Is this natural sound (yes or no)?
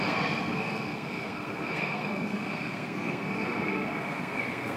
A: no